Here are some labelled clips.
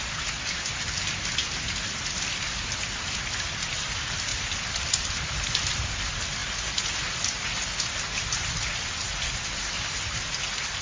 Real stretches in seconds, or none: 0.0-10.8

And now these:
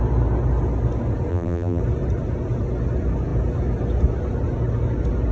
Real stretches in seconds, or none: 0.0-1.3; 1.8-5.3

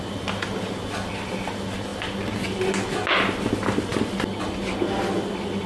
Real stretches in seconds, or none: 0.0-5.7

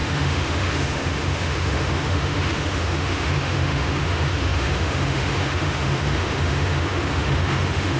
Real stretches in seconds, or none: none

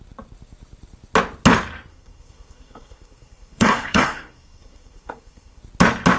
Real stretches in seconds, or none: 0.0-1.9; 5.6-6.2

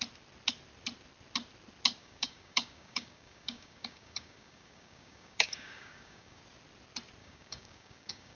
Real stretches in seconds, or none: 0.0-2.0; 6.4-7.2

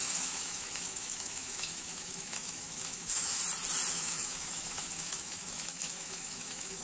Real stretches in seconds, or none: 3.4-3.9